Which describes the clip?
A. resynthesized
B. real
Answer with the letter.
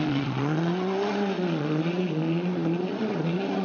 A